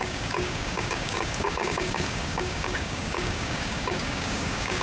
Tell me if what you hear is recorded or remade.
remade